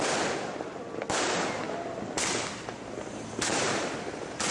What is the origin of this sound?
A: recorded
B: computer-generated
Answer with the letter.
A